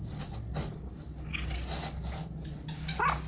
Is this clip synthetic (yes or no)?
no